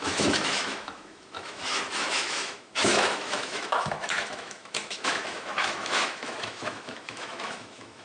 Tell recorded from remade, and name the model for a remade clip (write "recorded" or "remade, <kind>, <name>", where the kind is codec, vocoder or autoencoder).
remade, autoencoder, DAC-VAE